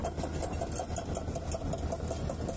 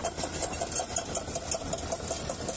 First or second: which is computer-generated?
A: second